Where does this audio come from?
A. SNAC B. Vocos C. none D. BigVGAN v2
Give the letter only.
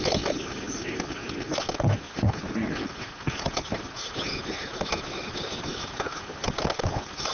C